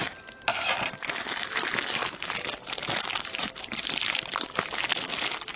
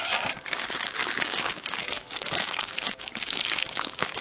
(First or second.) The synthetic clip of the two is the second